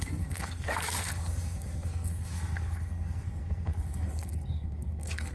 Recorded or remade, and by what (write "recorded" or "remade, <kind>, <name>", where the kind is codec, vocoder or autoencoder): remade, codec, SNAC